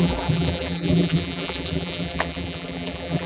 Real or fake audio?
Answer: fake